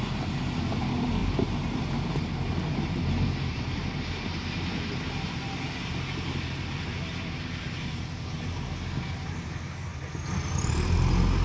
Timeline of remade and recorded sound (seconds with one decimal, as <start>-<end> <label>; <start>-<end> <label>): 0.0-1.2 recorded; 1.2-2.2 remade; 2.2-11.4 recorded